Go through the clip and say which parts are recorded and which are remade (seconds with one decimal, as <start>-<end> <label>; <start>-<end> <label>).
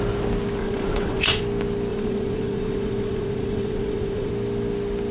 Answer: 0.0-0.6 recorded; 0.6-1.4 remade; 1.4-1.9 recorded; 1.9-4.3 remade; 4.3-5.1 recorded